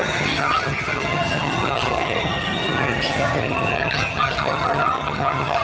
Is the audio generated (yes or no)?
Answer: yes